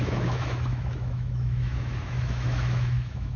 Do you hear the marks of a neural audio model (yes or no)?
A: yes